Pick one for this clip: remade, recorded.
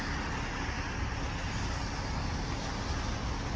recorded